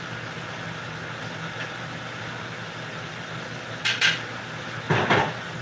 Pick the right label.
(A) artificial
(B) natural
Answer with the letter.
B